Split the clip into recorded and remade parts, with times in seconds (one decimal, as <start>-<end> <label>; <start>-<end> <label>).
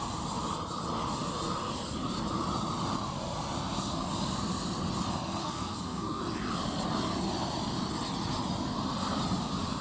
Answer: 0.0-5.4 recorded; 5.4-6.2 remade; 6.2-9.8 recorded